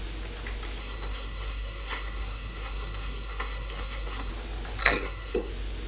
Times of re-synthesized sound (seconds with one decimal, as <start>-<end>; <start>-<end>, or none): 0.8-4.3; 4.8-5.5